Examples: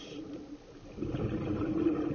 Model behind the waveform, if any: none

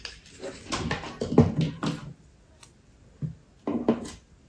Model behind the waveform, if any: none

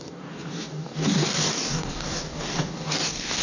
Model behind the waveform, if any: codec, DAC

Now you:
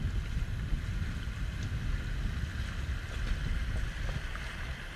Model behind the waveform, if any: none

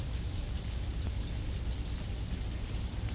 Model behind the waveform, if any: none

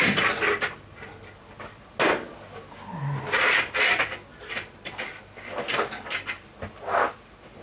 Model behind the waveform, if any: none